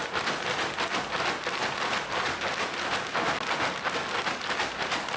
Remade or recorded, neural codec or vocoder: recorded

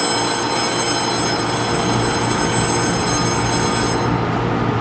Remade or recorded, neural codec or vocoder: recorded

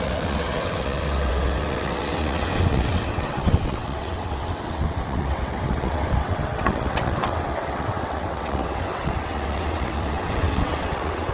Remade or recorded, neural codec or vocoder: remade, vocoder, WaveNeXt